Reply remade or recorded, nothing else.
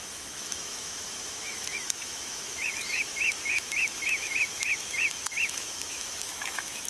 remade